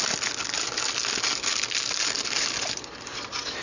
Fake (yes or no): no